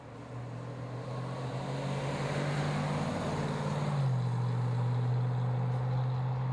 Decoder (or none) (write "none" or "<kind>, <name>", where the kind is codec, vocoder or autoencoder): none